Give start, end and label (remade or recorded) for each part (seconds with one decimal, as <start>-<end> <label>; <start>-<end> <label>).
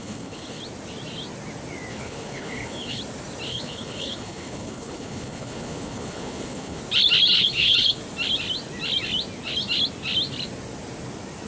0.0-0.6 remade; 0.6-1.9 recorded; 1.9-3.0 remade; 3.0-3.5 recorded; 3.5-6.8 remade; 6.8-7.3 recorded; 7.3-8.0 remade; 8.0-11.5 recorded